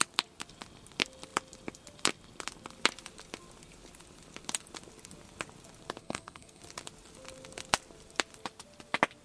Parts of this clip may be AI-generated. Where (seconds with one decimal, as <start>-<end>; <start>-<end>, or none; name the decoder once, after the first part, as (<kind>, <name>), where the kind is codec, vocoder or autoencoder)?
6.0-6.6 (codec, SNAC)